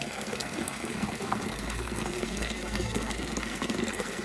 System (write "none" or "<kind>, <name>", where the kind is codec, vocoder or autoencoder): codec, SNAC